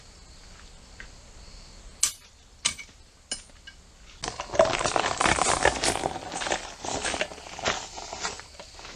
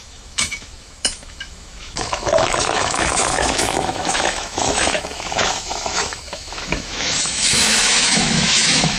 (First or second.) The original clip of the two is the first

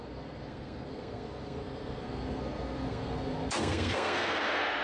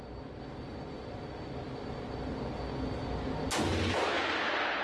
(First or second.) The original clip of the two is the second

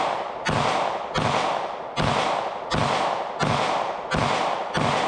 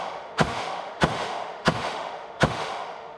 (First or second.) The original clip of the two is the first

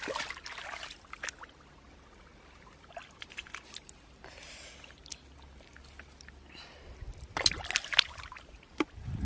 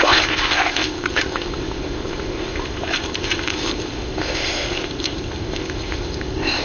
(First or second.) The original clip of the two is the first